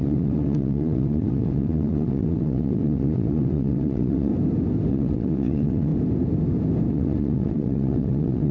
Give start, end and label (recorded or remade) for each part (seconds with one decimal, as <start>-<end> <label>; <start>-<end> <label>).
0.0-4.3 remade; 4.3-4.9 recorded; 4.9-5.9 remade; 5.9-6.9 recorded; 6.9-8.5 remade